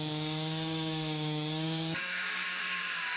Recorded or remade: remade